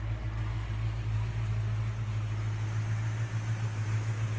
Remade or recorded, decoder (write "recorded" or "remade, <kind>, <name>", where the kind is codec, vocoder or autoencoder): recorded